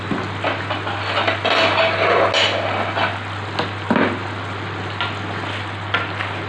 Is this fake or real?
real